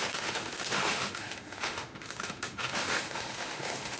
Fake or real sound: fake